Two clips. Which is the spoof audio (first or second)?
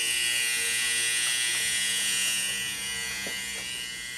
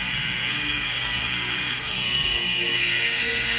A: second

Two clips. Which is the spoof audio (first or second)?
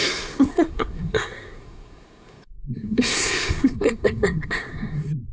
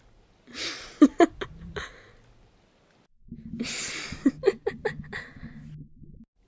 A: first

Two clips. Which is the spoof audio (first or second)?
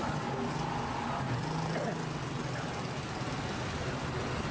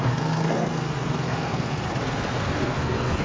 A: second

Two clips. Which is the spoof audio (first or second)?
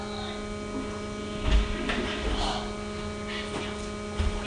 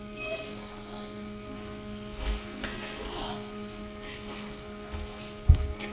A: second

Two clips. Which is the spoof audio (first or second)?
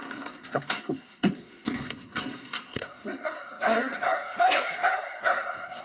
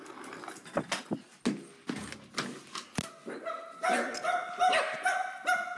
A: first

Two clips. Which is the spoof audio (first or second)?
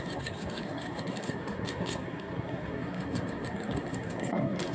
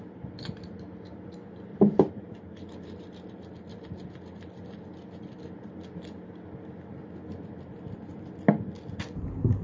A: first